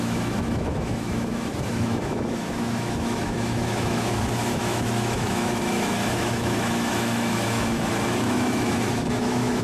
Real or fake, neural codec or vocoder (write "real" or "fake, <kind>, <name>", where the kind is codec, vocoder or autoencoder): fake, autoencoder, DAC-VAE